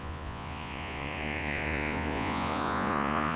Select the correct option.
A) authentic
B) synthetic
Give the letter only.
B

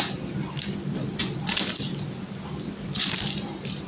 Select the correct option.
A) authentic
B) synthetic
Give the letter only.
A